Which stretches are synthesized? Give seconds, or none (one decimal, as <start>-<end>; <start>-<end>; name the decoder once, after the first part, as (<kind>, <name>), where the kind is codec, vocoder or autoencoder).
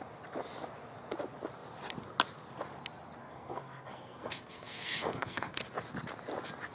3.2-5.6 (codec, SNAC)